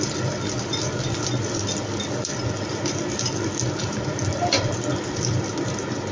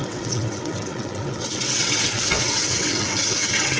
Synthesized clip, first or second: second